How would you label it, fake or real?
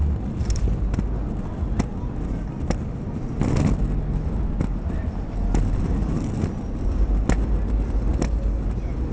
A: real